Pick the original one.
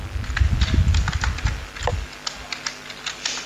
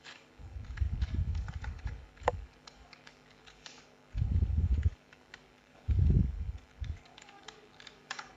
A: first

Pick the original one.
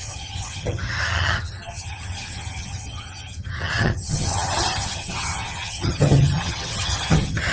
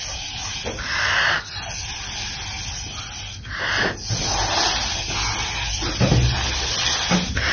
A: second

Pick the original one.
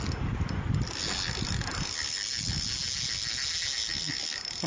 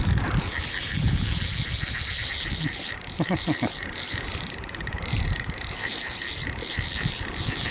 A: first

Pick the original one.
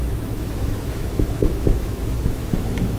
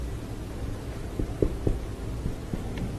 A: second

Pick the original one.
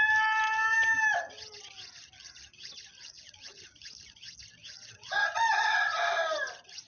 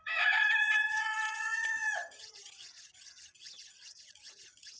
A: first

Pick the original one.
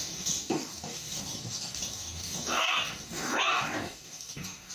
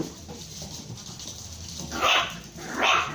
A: second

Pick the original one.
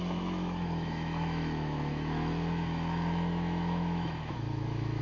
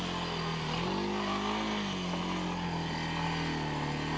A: second